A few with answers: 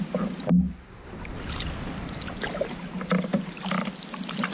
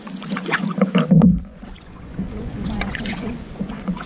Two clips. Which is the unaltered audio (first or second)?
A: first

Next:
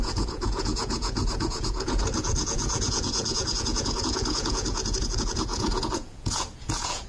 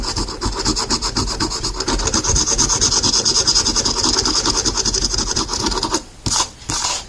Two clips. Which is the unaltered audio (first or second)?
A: second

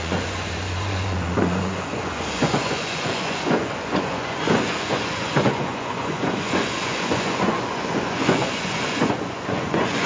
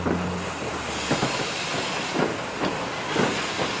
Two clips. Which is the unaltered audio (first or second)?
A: second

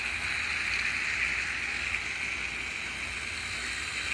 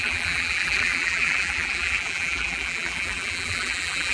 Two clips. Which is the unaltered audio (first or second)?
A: first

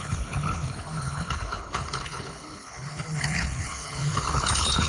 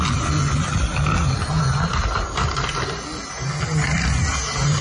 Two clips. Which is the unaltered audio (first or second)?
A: second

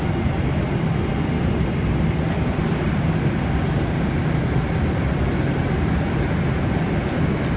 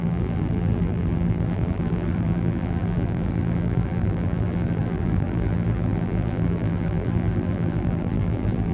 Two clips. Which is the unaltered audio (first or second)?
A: first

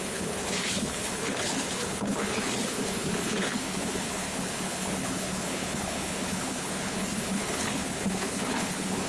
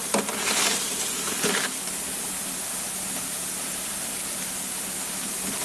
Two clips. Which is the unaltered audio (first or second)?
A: second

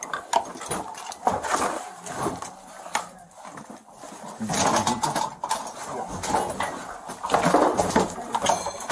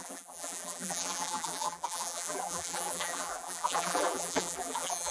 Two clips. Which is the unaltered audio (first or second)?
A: first